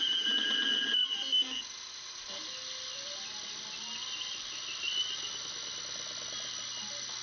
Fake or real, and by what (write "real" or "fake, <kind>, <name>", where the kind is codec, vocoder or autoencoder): real